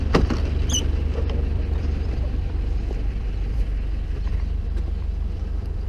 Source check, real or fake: fake